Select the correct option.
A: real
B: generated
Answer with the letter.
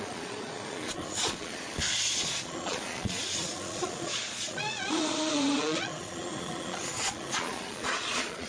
B